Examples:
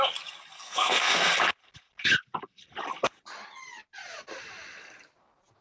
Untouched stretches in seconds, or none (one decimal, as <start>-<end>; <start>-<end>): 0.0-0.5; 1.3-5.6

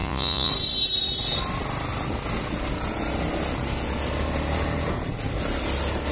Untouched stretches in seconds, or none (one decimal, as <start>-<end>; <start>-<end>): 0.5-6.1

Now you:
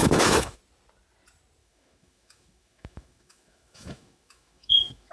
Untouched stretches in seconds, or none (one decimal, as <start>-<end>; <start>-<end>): 0.6-1.6